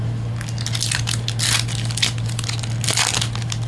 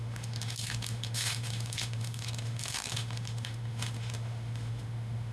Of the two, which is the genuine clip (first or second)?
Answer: first